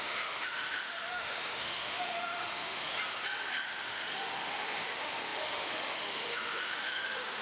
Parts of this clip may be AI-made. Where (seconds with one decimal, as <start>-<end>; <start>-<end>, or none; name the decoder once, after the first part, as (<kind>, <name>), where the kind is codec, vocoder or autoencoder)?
0.0-2.9 (autoencoder, DAC-VAE); 3.5-7.4